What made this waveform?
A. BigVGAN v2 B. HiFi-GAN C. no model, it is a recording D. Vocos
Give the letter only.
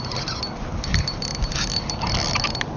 C